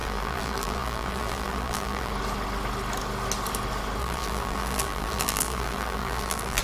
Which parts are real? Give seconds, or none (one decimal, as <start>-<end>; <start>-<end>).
2.1-4.0